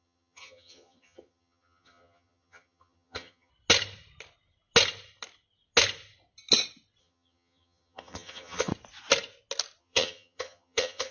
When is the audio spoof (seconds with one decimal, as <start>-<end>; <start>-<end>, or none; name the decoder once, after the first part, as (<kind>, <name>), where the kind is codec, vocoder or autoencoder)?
0.0-3.5 (vocoder, HiFi-GAN); 7.0-8.7; 9.8-11.1